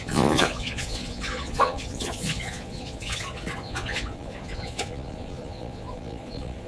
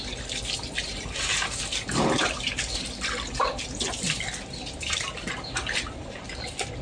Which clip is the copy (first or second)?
first